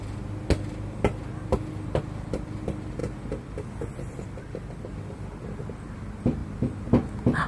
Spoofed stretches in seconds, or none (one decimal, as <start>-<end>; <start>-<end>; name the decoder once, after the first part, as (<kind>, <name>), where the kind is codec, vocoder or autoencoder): none